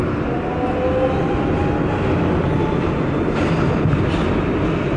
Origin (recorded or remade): recorded